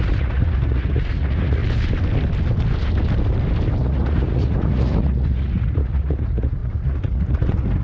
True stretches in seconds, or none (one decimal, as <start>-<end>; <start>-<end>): 1.6-3.8